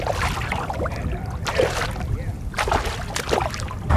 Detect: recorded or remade recorded